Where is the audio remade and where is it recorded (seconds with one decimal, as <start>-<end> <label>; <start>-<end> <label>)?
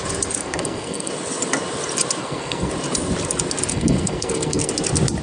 0.0-0.4 recorded; 0.4-1.1 remade; 1.1-2.2 recorded; 2.2-2.7 remade; 2.7-3.7 recorded; 3.7-4.7 remade; 4.7-5.2 recorded